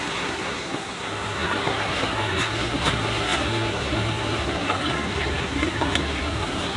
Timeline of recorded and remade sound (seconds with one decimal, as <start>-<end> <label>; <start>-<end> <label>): 0.0-6.8 remade

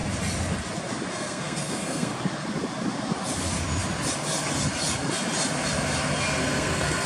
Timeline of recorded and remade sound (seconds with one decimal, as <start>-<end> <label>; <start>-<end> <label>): 0.0-1.1 recorded; 1.1-2.1 remade; 2.1-6.4 recorded; 6.4-7.1 remade

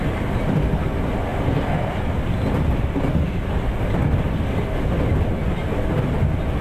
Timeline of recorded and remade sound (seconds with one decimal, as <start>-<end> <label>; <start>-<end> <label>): 0.0-6.6 recorded

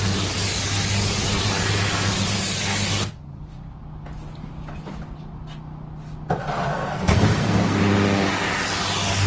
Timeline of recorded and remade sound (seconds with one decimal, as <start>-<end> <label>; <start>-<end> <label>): 0.0-6.7 recorded; 6.7-7.8 remade; 7.8-9.3 recorded

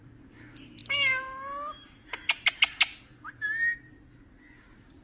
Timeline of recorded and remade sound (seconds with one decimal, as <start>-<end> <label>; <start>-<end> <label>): 0.0-5.0 recorded